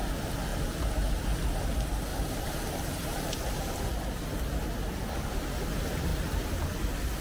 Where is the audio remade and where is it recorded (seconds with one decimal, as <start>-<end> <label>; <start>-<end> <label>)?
0.0-2.1 recorded; 2.1-3.8 remade; 3.8-7.2 recorded